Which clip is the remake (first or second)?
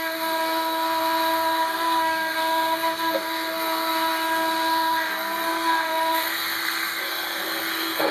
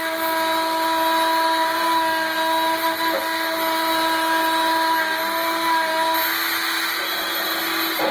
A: first